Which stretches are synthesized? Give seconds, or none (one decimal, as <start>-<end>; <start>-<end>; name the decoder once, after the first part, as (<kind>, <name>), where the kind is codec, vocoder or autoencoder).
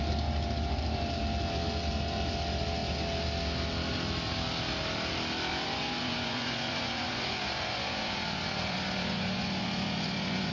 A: 5.5-10.5 (vocoder, Vocos)